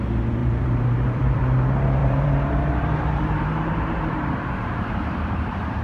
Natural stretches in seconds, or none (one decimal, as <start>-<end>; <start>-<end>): 0.0-0.4; 1.4-2.0